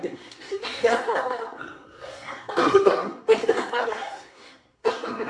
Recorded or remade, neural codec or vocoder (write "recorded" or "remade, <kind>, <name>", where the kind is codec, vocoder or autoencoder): remade, codec, SNAC